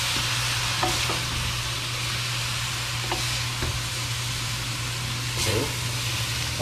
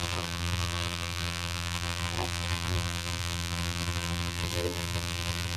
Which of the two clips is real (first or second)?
first